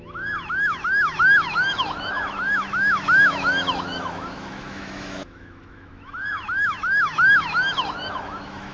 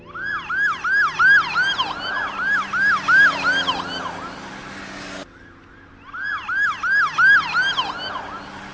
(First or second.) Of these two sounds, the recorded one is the second